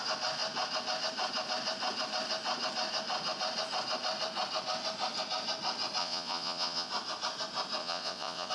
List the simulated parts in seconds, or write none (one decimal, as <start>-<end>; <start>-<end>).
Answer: 6.0-6.9; 7.8-8.5